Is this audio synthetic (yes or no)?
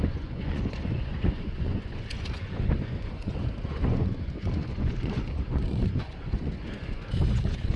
yes